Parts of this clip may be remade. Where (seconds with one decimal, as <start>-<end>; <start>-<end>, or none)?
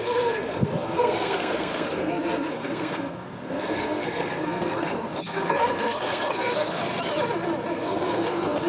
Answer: 0.0-6.8; 7.7-8.7